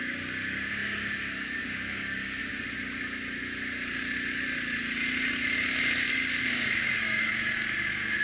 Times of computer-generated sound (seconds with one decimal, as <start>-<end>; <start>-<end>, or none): 0.0-2.4; 6.1-7.3